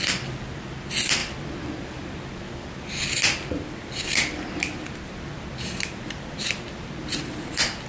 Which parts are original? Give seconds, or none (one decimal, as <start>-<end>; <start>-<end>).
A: 0.0-7.9